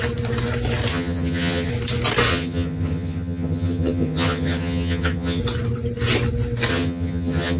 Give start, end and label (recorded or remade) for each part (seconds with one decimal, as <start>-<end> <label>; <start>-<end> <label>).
0.0-0.9 recorded; 0.9-1.7 remade; 1.7-2.3 recorded; 2.3-5.4 remade; 5.4-6.7 recorded; 6.7-7.6 remade